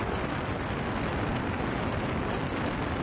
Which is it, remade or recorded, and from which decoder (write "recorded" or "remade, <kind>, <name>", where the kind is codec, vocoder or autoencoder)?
recorded